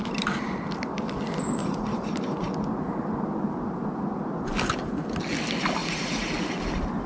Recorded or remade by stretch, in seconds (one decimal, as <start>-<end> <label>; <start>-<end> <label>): 0.0-1.6 recorded; 1.6-2.1 remade; 2.1-5.8 recorded; 5.8-6.3 remade; 6.3-7.1 recorded